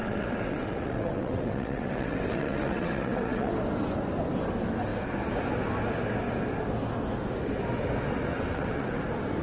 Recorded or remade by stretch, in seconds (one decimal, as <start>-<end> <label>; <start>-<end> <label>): 0.0-3.5 remade; 3.5-8.3 recorded; 8.3-9.0 remade; 9.0-9.4 recorded